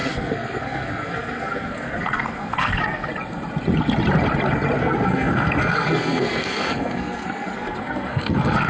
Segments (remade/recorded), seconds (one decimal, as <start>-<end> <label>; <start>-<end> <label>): 0.0-3.1 remade; 3.1-4.8 recorded; 4.8-8.7 remade